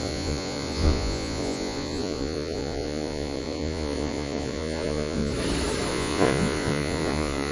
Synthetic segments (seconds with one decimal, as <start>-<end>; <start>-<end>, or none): 0.0-5.3; 5.9-7.5